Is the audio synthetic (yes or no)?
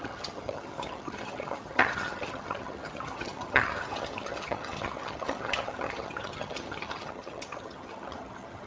yes